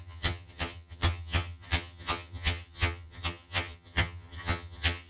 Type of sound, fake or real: fake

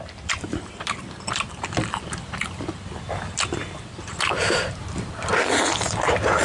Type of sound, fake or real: fake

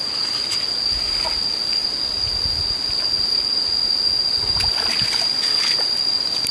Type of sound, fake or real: real